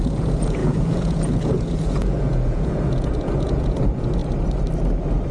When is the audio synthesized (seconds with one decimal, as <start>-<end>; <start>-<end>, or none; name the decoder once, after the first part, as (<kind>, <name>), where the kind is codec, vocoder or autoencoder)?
0.0-4.2 (vocoder, Vocos)

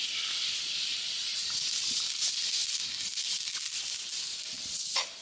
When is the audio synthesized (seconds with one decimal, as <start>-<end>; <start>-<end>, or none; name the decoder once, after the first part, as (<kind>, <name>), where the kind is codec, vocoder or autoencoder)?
none

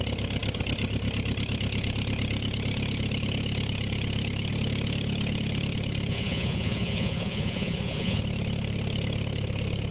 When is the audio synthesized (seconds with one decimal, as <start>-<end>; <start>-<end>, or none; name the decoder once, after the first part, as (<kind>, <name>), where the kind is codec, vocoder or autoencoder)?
6.1-8.2 (vocoder, Vocos)

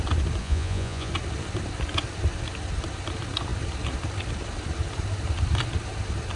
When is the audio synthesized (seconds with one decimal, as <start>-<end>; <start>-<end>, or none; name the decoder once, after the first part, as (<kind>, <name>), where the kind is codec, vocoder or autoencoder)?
0.4-1.1 (vocoder, Vocos)

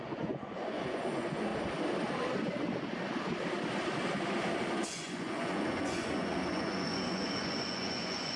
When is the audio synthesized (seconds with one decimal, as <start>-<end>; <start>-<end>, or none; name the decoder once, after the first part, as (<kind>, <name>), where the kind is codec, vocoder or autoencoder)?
0.0-1.5 (vocoder, Vocos); 4.7-8.4

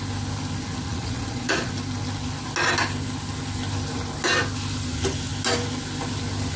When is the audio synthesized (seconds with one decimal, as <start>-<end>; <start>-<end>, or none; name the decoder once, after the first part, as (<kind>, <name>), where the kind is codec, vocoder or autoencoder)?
0.9-1.7 (vocoder, Vocos)